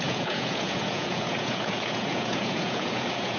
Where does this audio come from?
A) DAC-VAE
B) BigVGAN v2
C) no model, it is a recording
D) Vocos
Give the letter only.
D